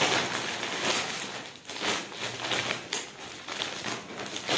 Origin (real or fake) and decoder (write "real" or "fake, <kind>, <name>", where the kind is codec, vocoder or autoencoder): real